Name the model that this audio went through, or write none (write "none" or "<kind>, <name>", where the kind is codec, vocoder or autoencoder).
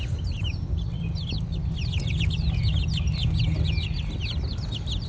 none